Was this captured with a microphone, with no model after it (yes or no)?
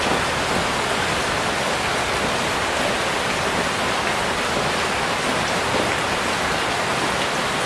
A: yes